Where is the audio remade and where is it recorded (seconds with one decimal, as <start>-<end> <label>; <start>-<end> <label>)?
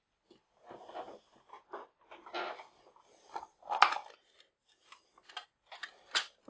0.0-6.5 recorded